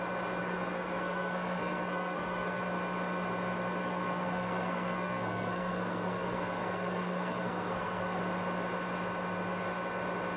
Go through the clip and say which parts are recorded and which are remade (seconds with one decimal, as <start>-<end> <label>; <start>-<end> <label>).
0.0-0.4 recorded; 0.4-2.6 remade; 2.6-3.8 recorded; 3.8-8.2 remade; 8.2-10.4 recorded